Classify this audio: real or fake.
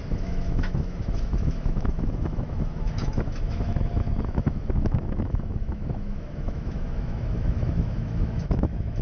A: fake